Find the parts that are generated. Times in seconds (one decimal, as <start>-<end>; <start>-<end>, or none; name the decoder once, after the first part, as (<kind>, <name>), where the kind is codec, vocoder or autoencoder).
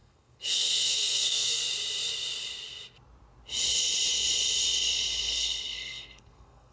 0.0-1.6 (codec, SNAC); 5.3-6.7